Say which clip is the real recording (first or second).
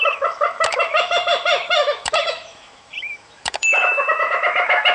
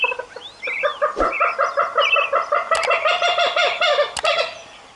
second